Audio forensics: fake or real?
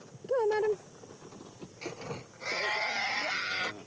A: real